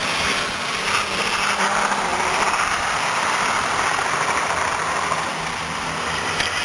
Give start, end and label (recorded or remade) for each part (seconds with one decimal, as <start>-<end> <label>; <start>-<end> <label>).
0.0-6.6 recorded